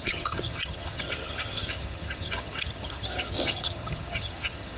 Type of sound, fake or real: fake